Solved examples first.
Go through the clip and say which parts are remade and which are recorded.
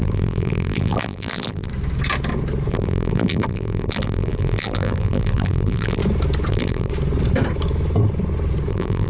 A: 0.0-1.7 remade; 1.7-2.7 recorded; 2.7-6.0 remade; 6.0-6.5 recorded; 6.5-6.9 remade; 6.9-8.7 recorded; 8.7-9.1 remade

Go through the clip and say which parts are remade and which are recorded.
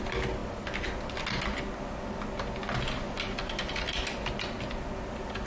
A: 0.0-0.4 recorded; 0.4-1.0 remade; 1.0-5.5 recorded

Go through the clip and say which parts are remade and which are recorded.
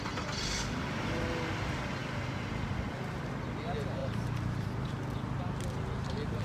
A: 0.0-4.0 recorded; 4.0-4.9 remade; 4.9-6.4 recorded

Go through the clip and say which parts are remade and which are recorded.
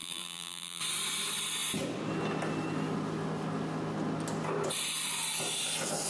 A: 0.0-0.8 remade; 0.8-6.1 recorded